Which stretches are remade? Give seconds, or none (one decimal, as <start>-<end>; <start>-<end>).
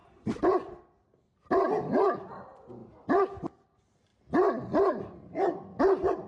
0.0-6.3